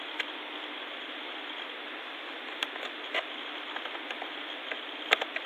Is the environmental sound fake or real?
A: real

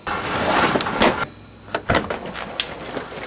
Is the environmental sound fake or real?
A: real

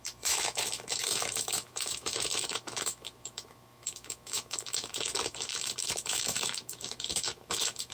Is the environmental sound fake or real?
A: fake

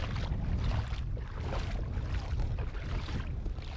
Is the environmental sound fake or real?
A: real